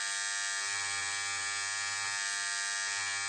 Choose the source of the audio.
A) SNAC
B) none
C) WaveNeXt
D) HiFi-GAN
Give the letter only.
B